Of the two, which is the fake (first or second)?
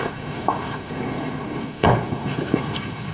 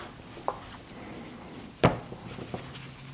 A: first